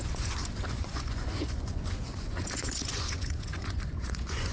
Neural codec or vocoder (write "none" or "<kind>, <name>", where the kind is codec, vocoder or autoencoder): vocoder, Vocos